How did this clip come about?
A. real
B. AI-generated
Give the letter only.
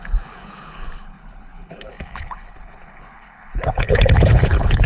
B